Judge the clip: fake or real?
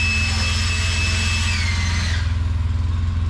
real